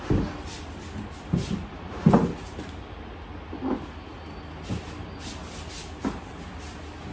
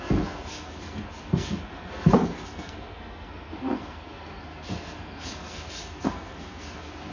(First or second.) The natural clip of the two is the first